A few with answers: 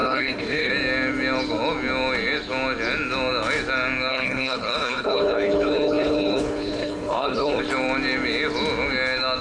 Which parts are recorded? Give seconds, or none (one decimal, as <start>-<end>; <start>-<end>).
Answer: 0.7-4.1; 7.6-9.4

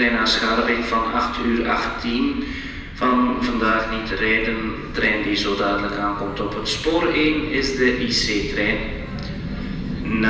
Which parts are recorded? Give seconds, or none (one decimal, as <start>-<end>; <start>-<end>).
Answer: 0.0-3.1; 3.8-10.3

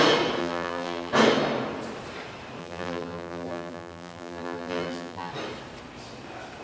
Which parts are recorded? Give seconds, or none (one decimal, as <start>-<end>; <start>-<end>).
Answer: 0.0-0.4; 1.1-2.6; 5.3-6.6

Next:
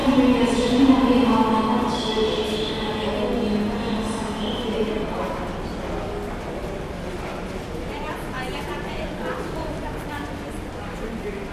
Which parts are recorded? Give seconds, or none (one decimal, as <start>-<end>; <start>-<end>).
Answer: 0.0-11.5

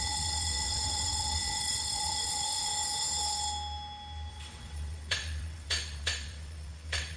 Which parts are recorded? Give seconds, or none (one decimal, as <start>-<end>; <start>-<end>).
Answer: 2.7-4.3